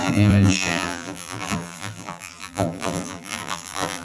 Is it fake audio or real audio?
fake